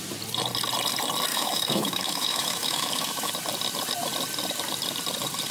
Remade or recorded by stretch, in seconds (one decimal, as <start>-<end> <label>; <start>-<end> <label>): 0.0-1.3 recorded; 1.3-3.3 remade; 3.3-5.5 recorded